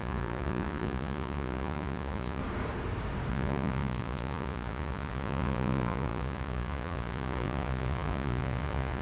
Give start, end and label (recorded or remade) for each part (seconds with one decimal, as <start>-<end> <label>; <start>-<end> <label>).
0.0-2.4 remade; 2.4-3.3 recorded; 3.3-9.0 remade